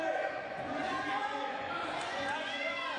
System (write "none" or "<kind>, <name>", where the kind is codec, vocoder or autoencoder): vocoder, Vocos